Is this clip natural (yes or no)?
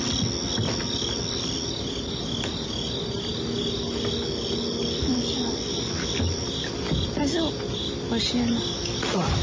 yes